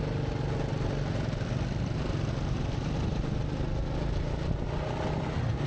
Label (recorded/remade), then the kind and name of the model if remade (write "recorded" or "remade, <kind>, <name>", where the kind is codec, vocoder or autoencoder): recorded